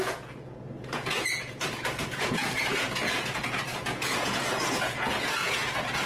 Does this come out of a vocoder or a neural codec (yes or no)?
yes